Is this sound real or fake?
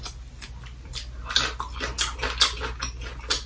real